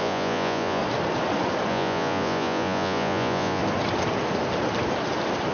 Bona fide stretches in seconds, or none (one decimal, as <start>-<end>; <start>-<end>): 0.8-1.7; 3.6-5.5